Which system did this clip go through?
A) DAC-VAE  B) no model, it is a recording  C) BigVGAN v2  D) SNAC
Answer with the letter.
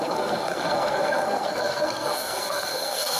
D